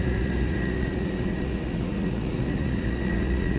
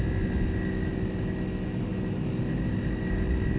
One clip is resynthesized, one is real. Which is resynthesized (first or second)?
first